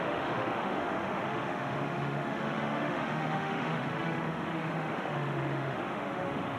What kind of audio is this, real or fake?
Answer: fake